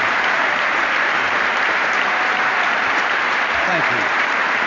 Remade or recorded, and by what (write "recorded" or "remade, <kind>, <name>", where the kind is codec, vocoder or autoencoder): remade, vocoder, BigVGAN v2